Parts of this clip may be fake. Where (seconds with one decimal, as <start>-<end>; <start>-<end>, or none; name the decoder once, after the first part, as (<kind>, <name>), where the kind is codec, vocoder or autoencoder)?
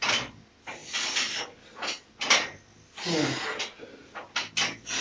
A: none